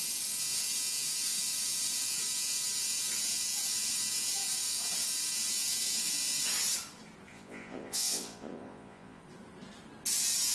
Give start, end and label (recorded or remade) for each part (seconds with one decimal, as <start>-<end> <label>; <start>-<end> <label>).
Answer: 0.0-7.3 recorded; 7.3-9.2 remade; 9.2-10.5 recorded